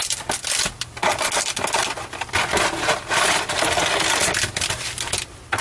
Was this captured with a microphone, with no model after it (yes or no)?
yes